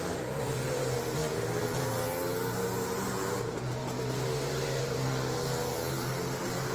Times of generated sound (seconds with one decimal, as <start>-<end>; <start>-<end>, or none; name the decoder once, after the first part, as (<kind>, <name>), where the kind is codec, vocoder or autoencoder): 0.0-1.2 (vocoder, BigVGAN v2); 1.8-3.8; 4.8-6.7